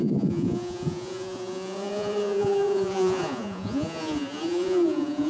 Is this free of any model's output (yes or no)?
no